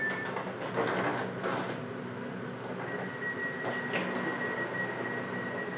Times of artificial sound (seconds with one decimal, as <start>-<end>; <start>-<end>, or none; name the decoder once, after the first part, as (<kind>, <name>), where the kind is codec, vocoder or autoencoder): none